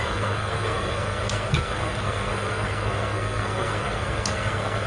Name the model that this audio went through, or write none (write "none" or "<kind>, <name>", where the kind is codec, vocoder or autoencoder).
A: codec, SNAC